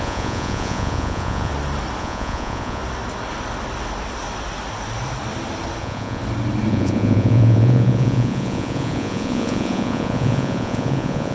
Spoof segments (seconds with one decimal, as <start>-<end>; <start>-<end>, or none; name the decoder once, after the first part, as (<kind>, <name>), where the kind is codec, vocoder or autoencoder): 0.0-1.5 (vocoder, Vocos); 2.0-2.8; 5.8-6.2; 6.7-11.3